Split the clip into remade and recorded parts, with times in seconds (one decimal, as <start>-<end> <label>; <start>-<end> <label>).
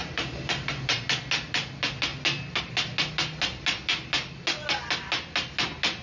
0.0-1.0 remade; 1.0-6.0 recorded